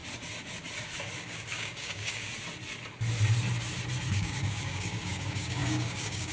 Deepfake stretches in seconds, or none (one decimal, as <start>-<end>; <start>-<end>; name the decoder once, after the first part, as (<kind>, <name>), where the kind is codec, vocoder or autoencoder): 1.2-2.3 (codec, DAC); 4.1-6.3